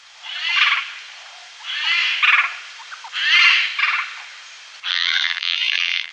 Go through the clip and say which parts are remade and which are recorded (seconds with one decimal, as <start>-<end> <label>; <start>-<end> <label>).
0.0-4.9 recorded; 4.9-6.1 remade